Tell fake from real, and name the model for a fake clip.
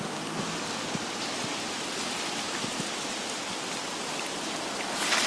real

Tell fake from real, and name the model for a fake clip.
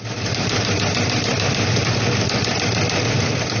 real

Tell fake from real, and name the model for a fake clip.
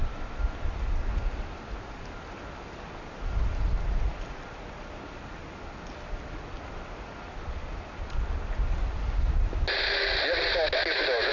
real